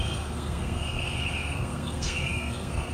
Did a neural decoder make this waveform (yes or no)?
yes